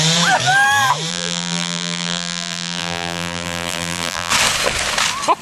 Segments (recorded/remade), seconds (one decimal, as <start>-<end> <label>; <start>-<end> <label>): 0.0-1.1 recorded; 1.1-4.3 remade; 4.3-5.4 recorded

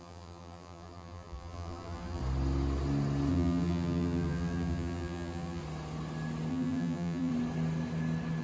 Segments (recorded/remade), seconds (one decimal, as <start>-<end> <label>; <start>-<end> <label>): 0.0-2.2 remade; 2.2-3.3 recorded; 3.3-5.6 remade; 5.6-6.5 recorded; 6.5-7.3 remade; 7.3-8.4 recorded

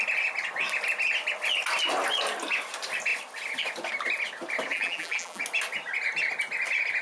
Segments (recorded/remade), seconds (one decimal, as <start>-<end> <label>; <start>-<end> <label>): 0.0-4.7 recorded; 4.7-5.4 remade; 5.4-7.0 recorded

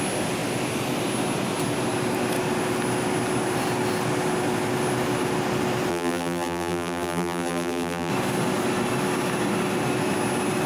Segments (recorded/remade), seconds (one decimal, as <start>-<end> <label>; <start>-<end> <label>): 0.0-5.9 recorded; 5.9-8.1 remade; 8.1-10.7 recorded